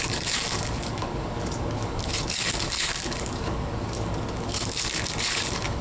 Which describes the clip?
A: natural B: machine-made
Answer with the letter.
B